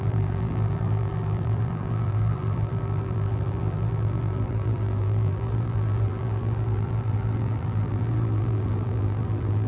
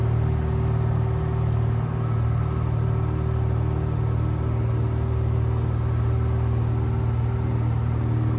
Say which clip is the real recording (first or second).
second